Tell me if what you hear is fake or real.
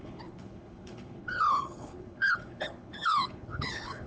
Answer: fake